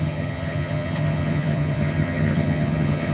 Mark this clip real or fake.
fake